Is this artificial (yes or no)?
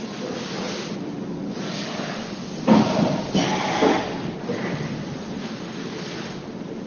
no